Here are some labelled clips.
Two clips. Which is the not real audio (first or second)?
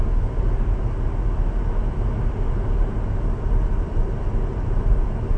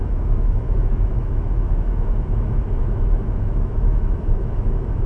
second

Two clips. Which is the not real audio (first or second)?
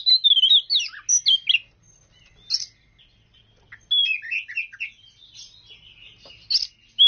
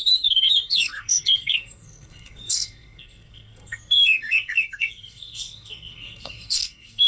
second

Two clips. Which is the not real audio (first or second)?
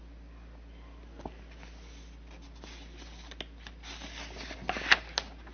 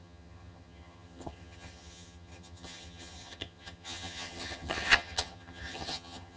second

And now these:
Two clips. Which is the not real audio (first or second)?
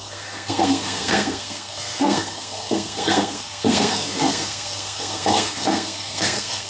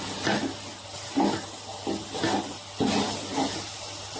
first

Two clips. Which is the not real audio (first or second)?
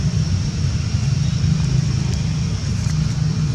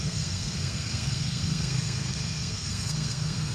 second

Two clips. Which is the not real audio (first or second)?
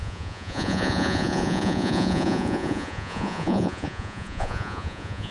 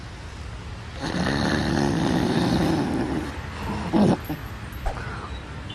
first